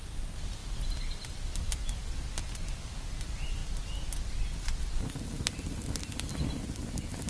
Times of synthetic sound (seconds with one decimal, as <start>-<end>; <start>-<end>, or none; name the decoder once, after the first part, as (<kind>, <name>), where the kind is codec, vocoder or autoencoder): none